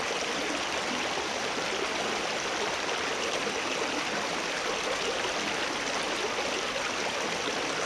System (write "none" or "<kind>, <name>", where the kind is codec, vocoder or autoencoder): none